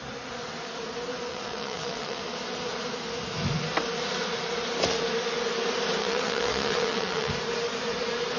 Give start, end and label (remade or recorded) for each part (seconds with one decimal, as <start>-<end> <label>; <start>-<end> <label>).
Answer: 0.0-1.3 recorded; 1.3-2.2 remade; 2.2-6.0 recorded; 6.0-7.3 remade; 7.3-8.4 recorded